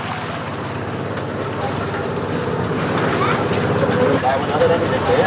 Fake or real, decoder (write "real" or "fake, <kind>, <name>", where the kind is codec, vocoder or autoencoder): real